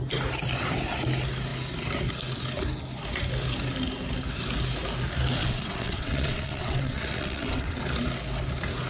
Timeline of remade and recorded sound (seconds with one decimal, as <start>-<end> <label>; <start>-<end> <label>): 0.0-5.4 recorded; 5.4-7.8 remade; 7.8-8.9 recorded